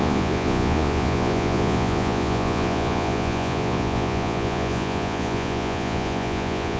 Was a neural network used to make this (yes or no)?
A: yes